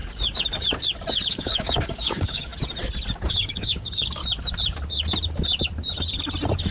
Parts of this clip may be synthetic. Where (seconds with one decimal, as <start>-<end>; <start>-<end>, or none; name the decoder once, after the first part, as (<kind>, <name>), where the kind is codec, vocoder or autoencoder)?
1.3-2.5 (codec, DAC); 3.2-4.2